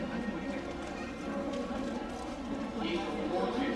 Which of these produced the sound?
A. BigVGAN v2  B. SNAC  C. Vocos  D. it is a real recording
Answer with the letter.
D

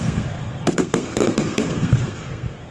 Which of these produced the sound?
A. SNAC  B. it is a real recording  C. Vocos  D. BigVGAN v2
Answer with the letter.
A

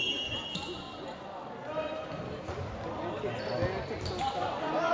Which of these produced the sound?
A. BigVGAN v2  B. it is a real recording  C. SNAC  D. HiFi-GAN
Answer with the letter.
B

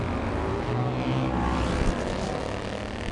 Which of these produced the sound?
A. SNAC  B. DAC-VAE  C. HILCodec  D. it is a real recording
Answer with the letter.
D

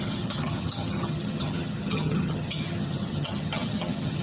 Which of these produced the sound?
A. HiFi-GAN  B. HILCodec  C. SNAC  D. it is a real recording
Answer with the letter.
A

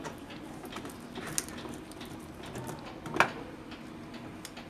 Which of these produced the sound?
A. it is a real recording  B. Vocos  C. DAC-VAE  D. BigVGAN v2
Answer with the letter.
A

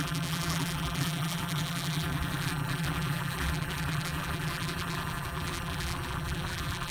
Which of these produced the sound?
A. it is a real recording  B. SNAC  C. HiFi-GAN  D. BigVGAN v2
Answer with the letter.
D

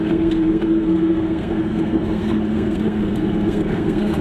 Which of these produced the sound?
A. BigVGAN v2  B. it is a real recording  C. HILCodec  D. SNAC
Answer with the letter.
D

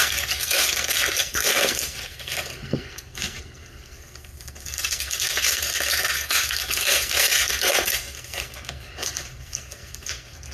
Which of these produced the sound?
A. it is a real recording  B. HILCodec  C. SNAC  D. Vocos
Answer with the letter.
C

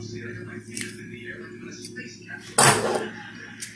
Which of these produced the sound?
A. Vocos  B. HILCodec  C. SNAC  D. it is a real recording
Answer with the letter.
D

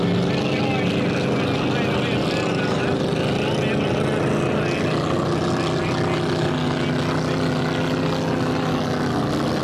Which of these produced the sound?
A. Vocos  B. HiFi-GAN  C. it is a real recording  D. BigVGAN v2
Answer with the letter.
C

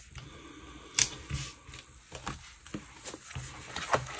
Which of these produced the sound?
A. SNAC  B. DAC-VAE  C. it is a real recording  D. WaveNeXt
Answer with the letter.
C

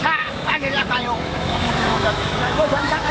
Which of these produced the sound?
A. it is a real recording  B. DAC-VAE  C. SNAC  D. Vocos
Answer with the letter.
B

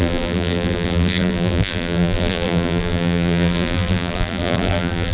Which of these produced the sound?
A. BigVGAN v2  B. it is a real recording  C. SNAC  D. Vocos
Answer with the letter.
A